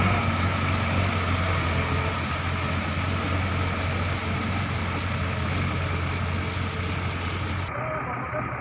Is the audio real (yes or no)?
yes